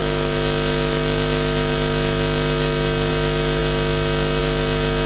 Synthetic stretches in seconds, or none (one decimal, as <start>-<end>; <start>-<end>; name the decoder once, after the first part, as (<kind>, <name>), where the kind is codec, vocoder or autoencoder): none